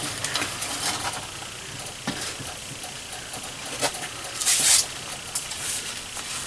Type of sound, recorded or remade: recorded